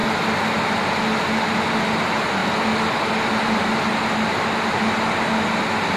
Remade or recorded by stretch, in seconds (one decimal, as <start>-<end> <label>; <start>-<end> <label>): 0.0-6.0 recorded